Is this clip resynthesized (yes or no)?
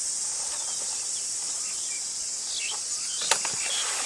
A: no